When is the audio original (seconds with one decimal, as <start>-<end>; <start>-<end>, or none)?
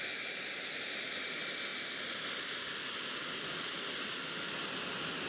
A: 0.0-5.3